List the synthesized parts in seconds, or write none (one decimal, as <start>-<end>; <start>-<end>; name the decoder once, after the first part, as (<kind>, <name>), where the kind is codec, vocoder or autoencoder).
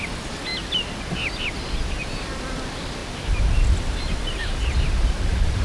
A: 0.0-0.5 (vocoder, BigVGAN v2); 2.0-5.6